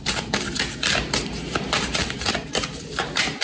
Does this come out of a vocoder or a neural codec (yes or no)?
yes